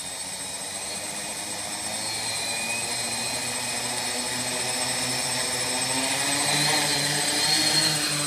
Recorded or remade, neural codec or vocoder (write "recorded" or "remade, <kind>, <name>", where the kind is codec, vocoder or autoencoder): recorded